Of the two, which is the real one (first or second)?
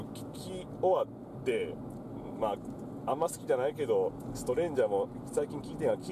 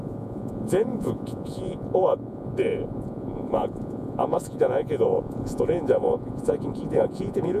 first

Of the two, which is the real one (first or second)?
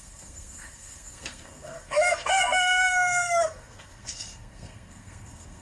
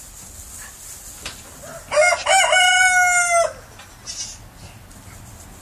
second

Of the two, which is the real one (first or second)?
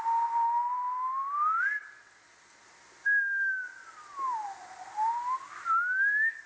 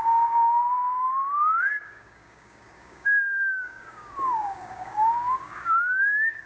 first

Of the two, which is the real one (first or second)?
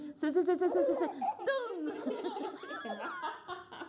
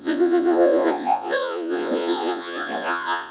first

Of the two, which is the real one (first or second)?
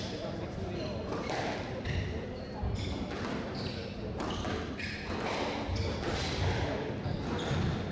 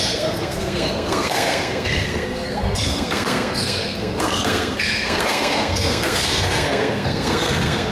first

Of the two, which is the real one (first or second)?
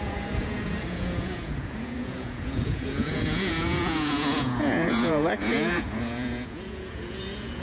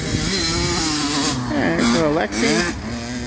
second